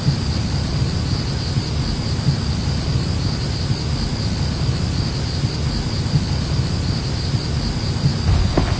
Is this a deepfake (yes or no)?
no